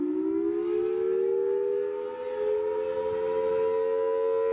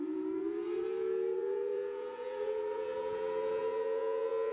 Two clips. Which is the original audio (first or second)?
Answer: first